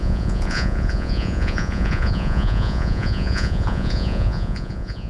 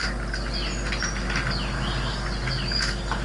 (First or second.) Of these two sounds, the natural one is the second